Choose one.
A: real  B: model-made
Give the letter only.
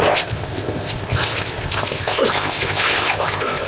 B